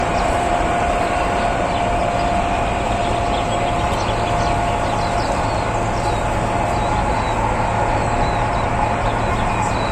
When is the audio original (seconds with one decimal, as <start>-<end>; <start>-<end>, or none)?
1.3-9.9

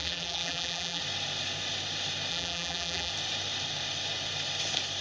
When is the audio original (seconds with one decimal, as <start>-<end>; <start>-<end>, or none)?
1.0-2.3; 3.1-5.0

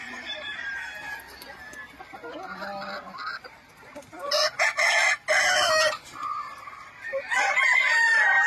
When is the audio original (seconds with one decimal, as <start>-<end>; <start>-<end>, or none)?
0.7-8.5

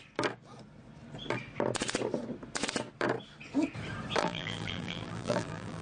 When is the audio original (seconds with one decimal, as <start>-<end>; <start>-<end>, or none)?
0.0-4.2